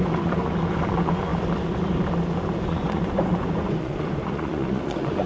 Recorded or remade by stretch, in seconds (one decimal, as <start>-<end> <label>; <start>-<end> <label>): 0.0-1.3 remade; 1.3-2.6 recorded; 2.6-5.3 remade